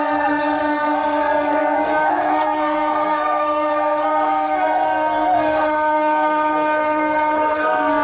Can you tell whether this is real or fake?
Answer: fake